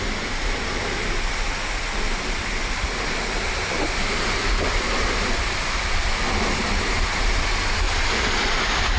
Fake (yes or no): no